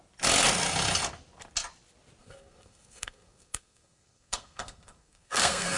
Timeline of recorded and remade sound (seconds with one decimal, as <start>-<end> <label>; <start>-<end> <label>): 0.0-2.2 recorded; 2.2-5.8 remade